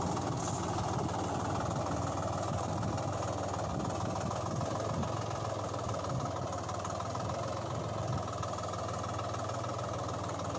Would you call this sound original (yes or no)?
yes